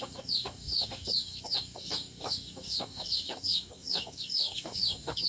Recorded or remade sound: remade